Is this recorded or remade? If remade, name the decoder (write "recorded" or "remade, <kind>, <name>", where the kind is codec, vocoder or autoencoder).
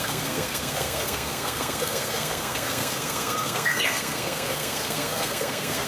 remade, codec, SNAC